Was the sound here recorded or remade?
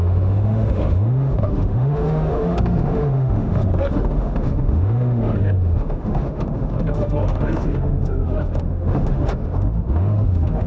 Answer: remade